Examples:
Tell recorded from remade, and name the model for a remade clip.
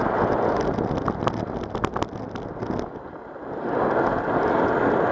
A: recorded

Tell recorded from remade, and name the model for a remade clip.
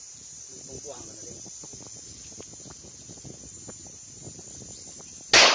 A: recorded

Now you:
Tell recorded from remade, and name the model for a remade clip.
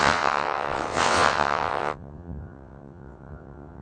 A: remade, vocoder, WaveNeXt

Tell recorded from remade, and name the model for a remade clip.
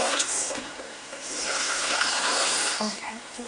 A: remade, codec, SNAC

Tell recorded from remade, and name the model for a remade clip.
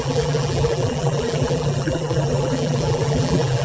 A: remade, vocoder, BigVGAN v2